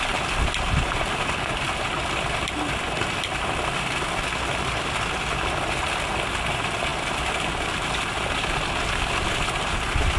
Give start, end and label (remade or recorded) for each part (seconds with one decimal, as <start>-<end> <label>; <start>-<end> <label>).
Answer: 0.0-10.2 recorded